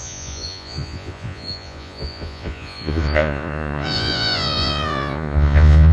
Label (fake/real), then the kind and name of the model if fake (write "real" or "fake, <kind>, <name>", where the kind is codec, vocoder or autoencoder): fake, vocoder, Vocos